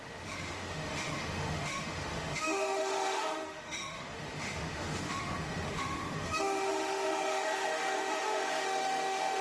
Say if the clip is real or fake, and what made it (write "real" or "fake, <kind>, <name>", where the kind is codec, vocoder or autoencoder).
fake, autoencoder, DAC-VAE